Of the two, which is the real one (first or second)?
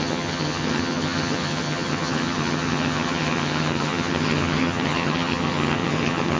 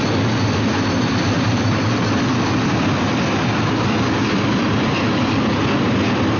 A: second